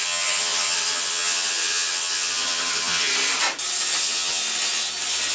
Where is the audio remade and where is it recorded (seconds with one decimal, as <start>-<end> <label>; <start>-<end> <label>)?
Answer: 0.0-3.1 remade; 3.1-4.0 recorded; 4.0-4.4 remade; 4.4-5.3 recorded